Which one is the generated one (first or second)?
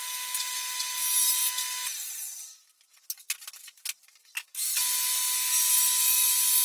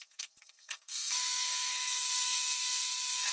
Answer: second